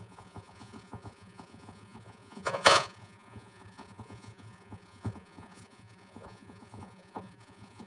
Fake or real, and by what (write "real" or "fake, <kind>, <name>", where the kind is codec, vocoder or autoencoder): fake, vocoder, Vocos